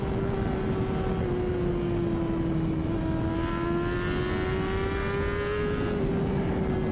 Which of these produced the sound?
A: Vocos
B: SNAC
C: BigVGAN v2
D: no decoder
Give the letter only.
D